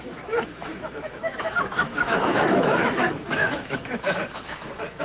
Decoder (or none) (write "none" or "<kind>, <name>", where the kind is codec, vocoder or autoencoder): autoencoder, DAC-VAE